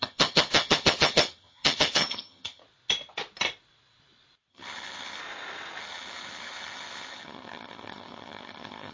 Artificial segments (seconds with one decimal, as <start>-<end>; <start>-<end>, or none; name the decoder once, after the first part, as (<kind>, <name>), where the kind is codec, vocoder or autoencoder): 0.0-2.6 (vocoder, HiFi-GAN); 4.5-5.2; 5.8-8.9